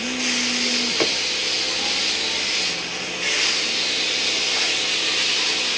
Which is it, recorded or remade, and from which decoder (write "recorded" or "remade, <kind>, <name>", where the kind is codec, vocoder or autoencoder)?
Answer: recorded